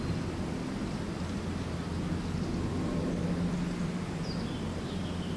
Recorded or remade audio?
recorded